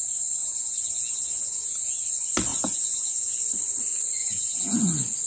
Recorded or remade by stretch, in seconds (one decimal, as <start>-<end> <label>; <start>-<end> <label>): 0.0-0.4 recorded; 0.4-1.9 remade; 1.9-2.5 recorded; 2.5-3.5 remade; 3.5-4.2 recorded; 4.2-4.8 remade; 4.8-5.3 recorded